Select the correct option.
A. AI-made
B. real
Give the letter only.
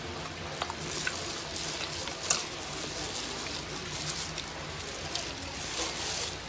B